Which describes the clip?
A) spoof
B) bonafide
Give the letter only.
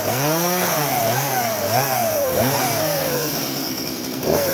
A